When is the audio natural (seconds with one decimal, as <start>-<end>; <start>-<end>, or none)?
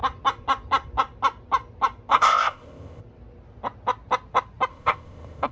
0.0-2.1; 3.0-4.7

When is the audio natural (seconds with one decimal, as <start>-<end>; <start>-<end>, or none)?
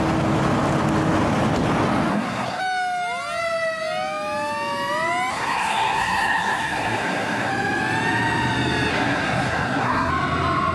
0.0-2.1; 2.6-5.3; 7.5-8.9; 10.1-10.7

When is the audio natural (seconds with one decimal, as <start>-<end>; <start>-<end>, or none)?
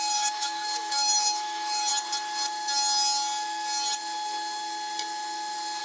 1.9-5.8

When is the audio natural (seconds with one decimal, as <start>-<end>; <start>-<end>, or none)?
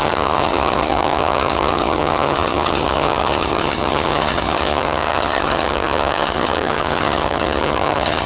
none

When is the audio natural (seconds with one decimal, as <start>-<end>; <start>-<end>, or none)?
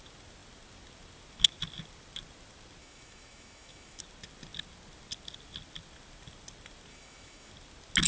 0.0-2.8; 4.0-6.9; 7.5-8.1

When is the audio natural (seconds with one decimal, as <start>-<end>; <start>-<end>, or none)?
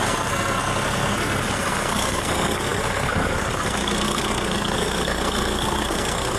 none